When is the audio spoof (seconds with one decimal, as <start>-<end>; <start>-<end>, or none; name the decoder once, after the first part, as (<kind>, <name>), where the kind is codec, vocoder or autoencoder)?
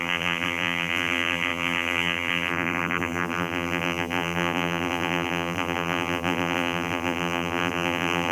0.0-8.3 (vocoder, BigVGAN v2)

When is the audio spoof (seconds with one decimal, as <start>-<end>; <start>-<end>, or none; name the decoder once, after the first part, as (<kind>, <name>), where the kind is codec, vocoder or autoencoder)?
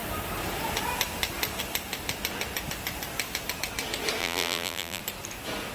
4.2-5.0 (vocoder, BigVGAN v2)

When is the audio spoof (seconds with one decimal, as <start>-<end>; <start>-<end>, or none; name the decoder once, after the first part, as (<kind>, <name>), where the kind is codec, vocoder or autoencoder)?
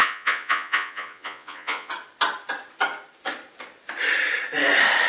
0.0-1.9 (vocoder, Vocos)